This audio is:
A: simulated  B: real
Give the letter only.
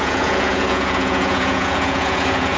A